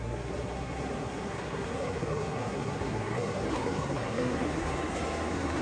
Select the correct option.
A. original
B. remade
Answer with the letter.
B